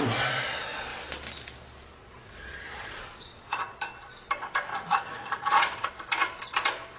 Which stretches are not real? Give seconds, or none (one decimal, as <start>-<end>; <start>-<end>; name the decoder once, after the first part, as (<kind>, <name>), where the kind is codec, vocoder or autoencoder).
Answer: 2.0-3.8 (vocoder, Vocos); 4.7-5.9